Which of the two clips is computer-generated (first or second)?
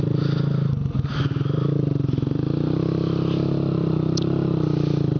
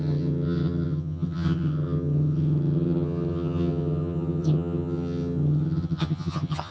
second